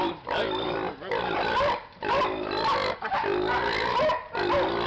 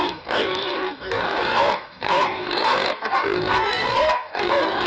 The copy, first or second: second